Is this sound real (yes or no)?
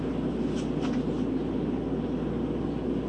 yes